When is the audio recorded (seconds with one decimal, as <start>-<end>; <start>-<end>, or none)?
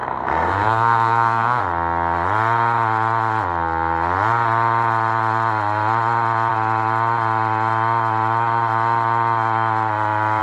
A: 1.6-10.4